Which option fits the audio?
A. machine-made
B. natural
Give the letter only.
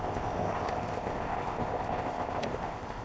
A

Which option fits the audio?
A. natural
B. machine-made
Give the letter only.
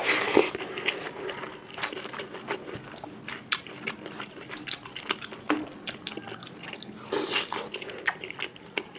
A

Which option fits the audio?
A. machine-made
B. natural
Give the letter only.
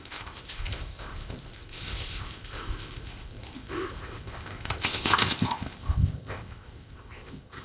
A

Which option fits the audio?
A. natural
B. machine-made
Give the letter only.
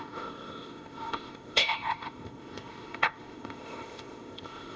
B